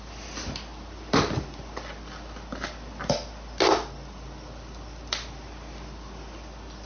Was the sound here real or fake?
real